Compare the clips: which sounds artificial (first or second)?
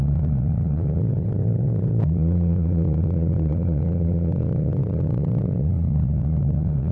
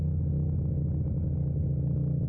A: first